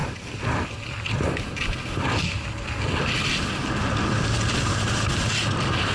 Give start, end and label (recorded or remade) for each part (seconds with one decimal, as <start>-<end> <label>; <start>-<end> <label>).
0.0-5.9 recorded